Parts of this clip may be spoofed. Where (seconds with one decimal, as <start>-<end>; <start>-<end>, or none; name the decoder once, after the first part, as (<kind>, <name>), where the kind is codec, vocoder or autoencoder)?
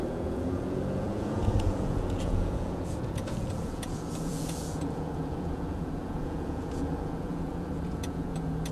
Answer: 0.0-8.7 (vocoder, Vocos)